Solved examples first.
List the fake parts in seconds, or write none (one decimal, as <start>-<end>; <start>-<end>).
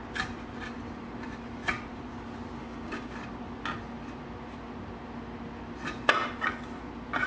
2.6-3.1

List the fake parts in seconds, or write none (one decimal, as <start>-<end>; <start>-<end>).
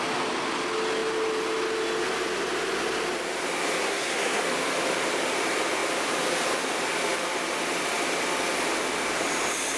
3.8-4.4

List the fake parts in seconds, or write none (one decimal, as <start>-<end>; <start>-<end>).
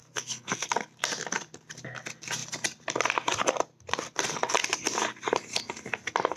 0.0-0.7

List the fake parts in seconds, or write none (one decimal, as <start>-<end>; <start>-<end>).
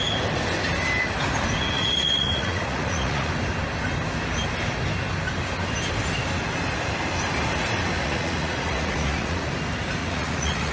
1.6-3.3; 8.0-9.5; 10.0-10.7